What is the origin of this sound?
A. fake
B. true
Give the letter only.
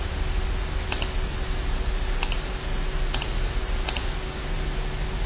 B